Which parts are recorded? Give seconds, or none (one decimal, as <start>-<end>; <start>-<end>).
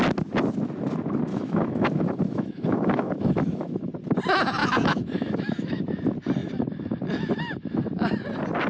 0.0-1.3; 3.9-4.6; 5.8-8.7